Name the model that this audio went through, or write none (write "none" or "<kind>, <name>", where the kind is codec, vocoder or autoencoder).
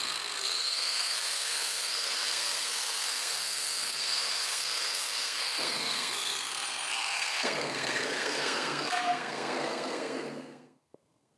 codec, SNAC